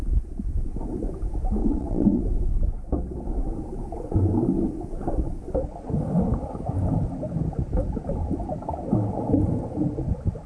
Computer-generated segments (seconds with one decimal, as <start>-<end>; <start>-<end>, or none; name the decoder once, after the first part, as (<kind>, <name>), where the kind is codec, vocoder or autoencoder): 1.6-2.2 (vocoder, WaveNeXt)